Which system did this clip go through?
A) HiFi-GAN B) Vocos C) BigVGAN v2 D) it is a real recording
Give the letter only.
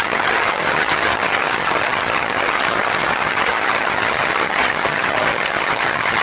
A